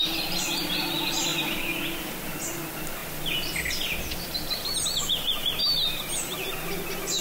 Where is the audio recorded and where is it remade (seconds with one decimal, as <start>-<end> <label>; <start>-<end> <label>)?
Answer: 0.0-7.2 recorded